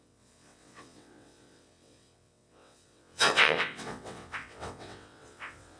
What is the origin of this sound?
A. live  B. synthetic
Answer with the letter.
B